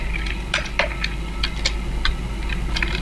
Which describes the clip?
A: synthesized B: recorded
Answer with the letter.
B